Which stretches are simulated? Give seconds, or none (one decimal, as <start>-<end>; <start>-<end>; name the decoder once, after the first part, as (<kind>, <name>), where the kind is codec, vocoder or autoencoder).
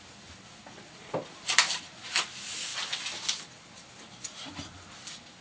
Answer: none